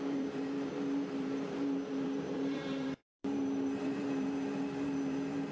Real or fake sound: fake